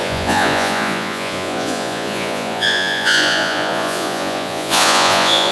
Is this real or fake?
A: fake